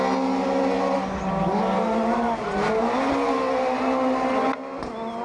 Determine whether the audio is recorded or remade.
recorded